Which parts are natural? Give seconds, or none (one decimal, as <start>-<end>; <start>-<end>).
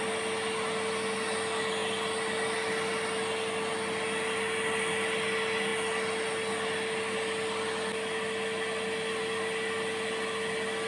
0.0-10.9